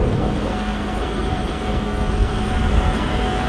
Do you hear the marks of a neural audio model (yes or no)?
yes